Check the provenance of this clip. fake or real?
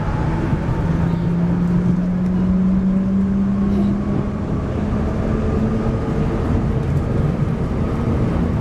real